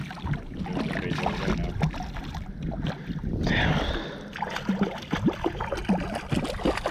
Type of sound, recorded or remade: recorded